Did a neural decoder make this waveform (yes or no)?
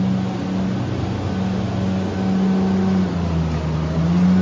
no